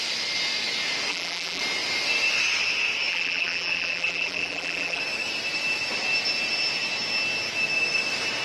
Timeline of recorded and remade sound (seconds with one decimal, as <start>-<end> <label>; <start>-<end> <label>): 0.0-1.1 recorded; 1.1-1.6 remade; 1.6-3.1 recorded; 3.1-5.0 remade; 5.0-8.4 recorded